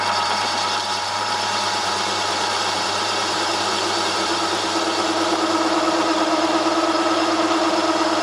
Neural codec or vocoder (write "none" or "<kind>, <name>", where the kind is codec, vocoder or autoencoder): vocoder, BigVGAN v2